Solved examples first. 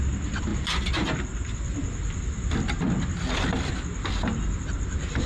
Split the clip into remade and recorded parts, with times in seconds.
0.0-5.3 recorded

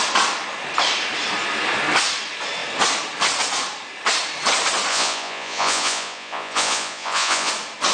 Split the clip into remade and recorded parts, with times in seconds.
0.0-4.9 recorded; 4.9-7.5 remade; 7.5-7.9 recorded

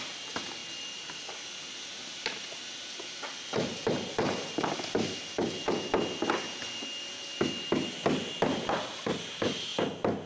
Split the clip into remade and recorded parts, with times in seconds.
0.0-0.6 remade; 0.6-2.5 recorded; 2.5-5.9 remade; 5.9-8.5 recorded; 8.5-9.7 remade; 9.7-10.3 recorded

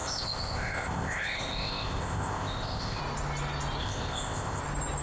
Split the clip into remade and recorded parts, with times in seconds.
0.0-3.0 remade; 3.0-3.8 recorded; 3.8-4.6 remade; 4.6-5.0 recorded

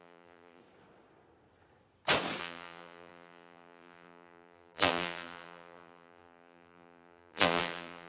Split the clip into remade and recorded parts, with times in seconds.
0.0-0.6 remade; 0.6-2.4 recorded; 2.4-8.1 remade

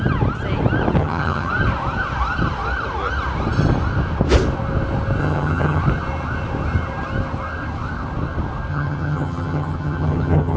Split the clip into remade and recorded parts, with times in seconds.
0.0-1.0 recorded; 1.0-1.5 remade; 1.5-5.2 recorded; 5.2-5.8 remade; 5.8-8.7 recorded; 8.7-10.6 remade

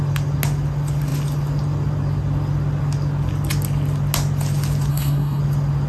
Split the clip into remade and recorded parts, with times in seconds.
0.0-4.9 recorded; 4.9-5.4 remade; 5.4-5.9 recorded